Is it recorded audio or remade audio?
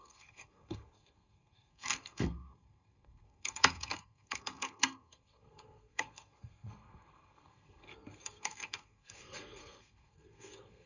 remade